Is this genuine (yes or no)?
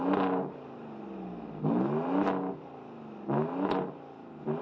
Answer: yes